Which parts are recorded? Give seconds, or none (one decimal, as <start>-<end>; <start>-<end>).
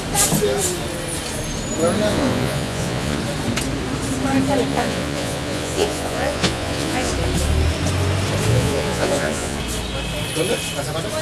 0.0-2.1; 3.2-4.7; 7.1-8.5; 9.6-11.2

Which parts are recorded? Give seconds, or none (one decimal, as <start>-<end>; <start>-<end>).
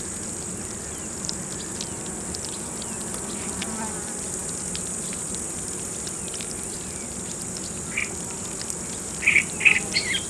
0.0-10.3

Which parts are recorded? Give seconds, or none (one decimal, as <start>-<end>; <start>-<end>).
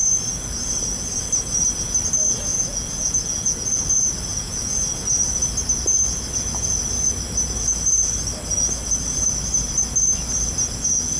0.0-2.5; 3.8-4.3; 4.8-11.2